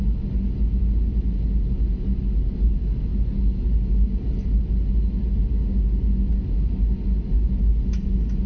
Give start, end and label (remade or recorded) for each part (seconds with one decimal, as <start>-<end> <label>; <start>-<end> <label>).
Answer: 0.0-8.5 recorded